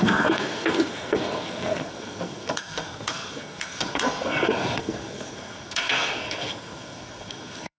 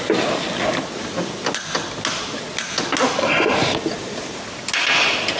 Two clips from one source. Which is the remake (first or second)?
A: first